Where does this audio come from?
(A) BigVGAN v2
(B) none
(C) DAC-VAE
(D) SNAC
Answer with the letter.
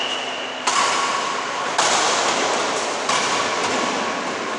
B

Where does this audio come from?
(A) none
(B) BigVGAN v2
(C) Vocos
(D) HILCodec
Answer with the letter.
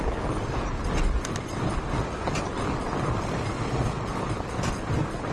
A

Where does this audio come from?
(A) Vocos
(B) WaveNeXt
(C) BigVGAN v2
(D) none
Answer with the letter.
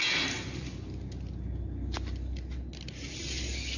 D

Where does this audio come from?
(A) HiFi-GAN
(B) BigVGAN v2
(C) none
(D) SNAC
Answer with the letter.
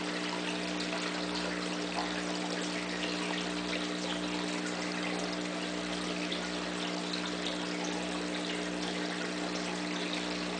C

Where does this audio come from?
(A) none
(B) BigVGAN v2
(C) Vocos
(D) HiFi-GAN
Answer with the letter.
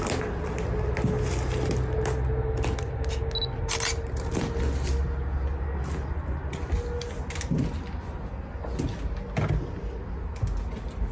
A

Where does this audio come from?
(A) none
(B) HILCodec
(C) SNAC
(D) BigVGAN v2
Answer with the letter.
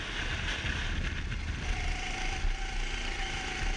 A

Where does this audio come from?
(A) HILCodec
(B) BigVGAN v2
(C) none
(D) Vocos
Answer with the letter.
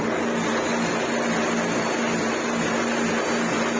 C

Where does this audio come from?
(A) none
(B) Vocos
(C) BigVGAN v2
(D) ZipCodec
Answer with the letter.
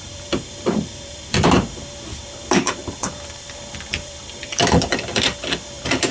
C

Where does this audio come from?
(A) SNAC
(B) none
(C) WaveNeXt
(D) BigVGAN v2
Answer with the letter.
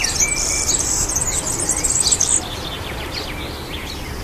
D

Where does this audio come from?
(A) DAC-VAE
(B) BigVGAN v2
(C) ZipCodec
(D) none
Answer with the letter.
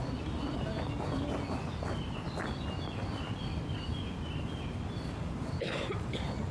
B